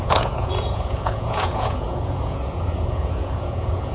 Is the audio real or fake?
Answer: fake